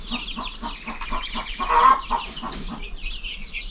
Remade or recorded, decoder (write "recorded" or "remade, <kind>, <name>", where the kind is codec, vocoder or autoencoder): recorded